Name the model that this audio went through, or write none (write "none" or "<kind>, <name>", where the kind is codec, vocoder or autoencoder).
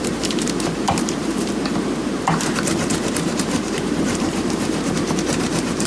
vocoder, BigVGAN v2